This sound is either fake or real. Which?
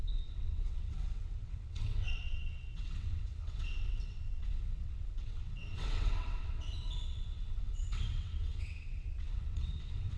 fake